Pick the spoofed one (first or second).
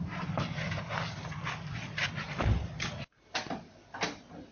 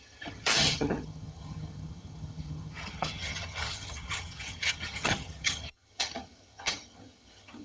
second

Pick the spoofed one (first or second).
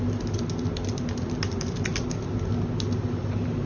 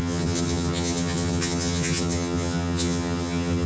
second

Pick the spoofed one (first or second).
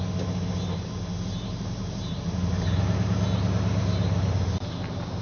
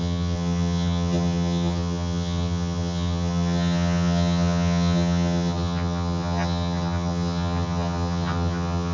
second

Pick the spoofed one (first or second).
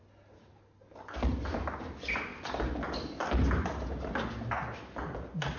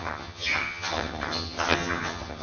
second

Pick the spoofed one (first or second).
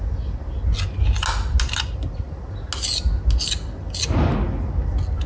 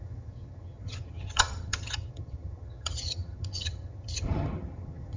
second